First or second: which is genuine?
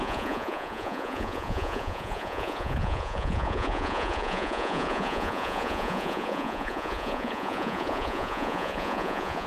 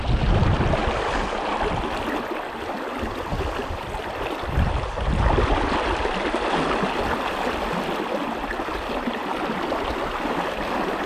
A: second